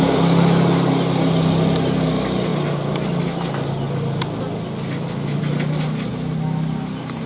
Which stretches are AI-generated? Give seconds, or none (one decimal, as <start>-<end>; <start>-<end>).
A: none